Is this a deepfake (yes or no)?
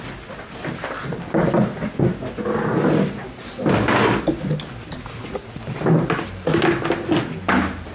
no